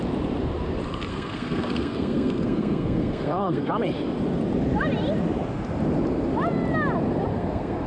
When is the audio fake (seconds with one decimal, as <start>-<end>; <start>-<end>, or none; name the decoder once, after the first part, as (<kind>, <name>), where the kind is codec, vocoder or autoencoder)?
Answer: 1.1-3.7 (codec, SNAC); 7.3-7.9

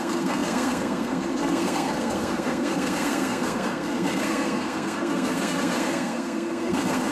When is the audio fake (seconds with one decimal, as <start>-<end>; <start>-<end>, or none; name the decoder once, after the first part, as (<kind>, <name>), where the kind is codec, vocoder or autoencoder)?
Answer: 0.0-7.1 (codec, SNAC)

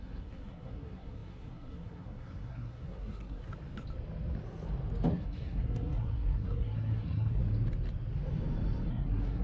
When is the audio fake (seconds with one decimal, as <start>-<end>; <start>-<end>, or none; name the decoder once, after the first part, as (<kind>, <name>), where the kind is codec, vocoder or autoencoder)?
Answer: 0.0-3.5 (codec, SNAC); 5.1-7.4; 8.9-9.4

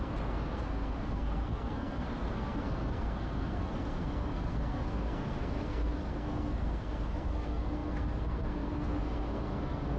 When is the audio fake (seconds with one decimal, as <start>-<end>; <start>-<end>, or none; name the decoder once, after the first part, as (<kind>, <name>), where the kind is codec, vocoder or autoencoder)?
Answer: 0.0-10.0 (codec, SNAC)

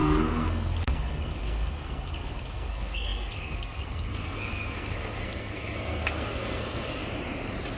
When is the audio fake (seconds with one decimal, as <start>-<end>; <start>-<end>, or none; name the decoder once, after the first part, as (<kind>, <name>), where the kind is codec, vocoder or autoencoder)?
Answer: 0.0-7.0 (codec, SNAC)

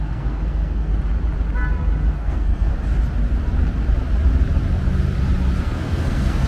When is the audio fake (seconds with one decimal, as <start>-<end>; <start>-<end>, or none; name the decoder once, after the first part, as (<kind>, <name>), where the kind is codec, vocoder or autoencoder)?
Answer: 0.0-0.9 (codec, SNAC); 2.1-2.7; 5.6-6.5

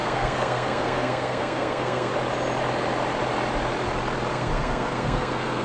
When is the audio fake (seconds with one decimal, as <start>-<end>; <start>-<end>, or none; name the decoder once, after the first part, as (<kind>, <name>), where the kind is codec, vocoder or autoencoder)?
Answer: 0.0-2.1 (codec, SNAC); 4.3-5.6